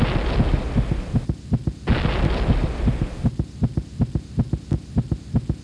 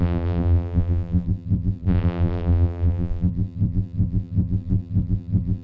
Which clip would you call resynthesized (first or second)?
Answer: second